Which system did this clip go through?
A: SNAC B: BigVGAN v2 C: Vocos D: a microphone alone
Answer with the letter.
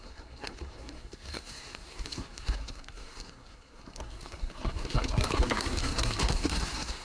A